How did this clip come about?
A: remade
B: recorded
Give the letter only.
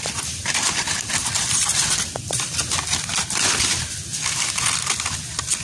B